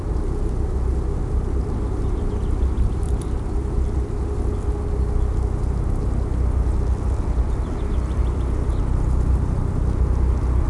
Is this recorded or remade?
recorded